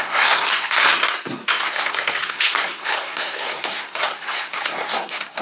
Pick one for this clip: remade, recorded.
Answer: remade